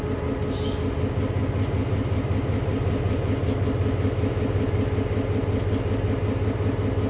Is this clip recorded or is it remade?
recorded